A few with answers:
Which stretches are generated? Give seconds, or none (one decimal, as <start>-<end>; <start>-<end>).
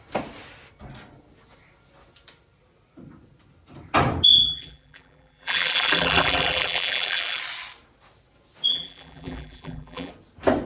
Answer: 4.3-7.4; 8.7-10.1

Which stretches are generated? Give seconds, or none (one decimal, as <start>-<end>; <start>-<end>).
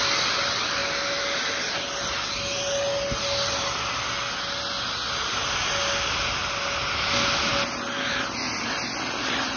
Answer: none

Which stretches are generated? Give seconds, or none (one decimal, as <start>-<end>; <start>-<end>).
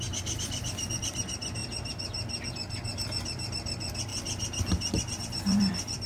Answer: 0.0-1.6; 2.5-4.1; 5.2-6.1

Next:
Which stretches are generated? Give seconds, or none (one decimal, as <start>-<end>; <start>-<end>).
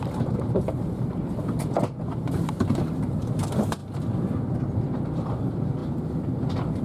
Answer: 0.0-3.8; 4.6-5.8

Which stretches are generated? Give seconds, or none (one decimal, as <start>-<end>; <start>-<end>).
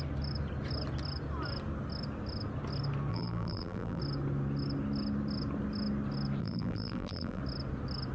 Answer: 3.1-4.0; 6.4-7.4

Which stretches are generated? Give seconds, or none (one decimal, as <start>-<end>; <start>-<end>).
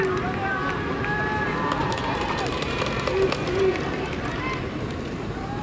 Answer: 1.8-5.6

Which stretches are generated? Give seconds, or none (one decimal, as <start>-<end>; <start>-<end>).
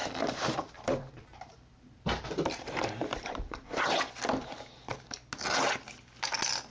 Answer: 0.0-4.0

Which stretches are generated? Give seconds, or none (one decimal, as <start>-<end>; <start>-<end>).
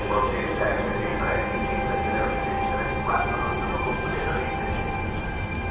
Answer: none